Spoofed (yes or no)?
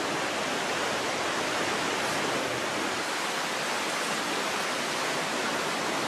no